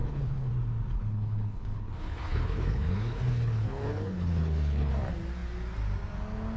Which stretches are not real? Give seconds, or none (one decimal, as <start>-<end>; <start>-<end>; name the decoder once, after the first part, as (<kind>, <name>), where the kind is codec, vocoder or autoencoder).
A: 0.0-0.5 (codec, HILCodec); 0.9-4.9